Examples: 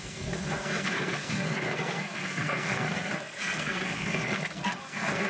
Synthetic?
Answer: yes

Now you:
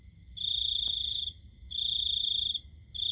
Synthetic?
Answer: no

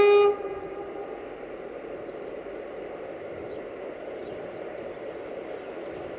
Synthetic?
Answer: no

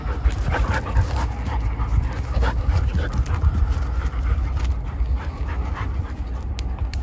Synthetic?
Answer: no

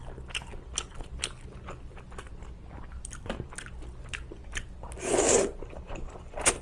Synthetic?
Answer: no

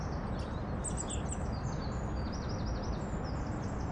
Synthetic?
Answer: no